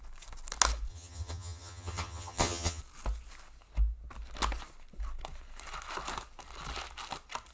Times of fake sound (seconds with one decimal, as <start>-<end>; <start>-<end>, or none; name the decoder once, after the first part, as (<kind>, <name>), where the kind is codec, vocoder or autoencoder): 0.9-2.8 (vocoder, HiFi-GAN)

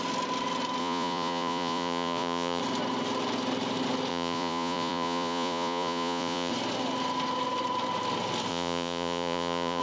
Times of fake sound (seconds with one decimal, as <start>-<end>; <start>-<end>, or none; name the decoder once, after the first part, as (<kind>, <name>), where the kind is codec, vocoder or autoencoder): 0.8-2.6 (vocoder, Vocos); 4.1-6.5; 8.5-9.8

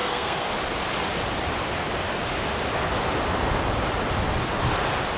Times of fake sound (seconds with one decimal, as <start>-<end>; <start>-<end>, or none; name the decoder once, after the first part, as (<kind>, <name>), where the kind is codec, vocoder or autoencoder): 0.0-0.5 (codec, SNAC)

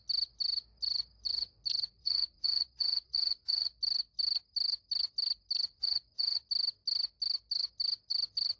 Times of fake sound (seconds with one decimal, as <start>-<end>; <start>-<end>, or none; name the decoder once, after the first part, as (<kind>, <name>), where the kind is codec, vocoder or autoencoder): 2.0-3.8 (vocoder, Vocos); 5.7-6.5

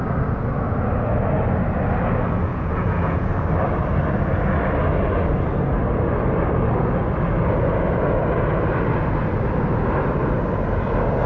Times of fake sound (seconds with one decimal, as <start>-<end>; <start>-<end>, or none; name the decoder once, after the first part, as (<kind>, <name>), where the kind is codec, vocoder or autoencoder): 2.5-3.3 (vocoder, Vocos)

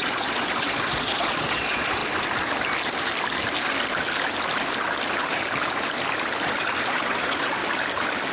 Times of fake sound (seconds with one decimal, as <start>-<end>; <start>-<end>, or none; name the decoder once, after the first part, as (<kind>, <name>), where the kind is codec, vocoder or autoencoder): 0.0-2.0 (vocoder, Vocos); 6.8-7.6

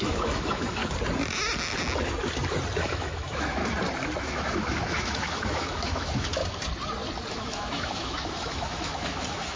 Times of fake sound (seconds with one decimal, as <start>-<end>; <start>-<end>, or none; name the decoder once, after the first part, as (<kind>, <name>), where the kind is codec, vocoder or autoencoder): 0.0-0.8 (autoencoder, DAC-VAE); 2.8-3.6; 4.2-6.4; 7.3-9.6

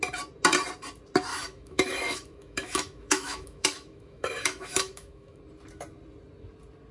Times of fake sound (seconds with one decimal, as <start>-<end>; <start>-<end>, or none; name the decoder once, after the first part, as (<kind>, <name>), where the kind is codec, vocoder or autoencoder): 1.3-5.4 (autoencoder, DAC-VAE)